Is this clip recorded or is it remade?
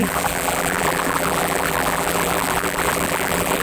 remade